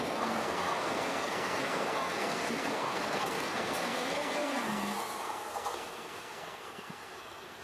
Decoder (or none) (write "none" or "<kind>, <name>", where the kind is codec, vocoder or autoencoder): codec, SNAC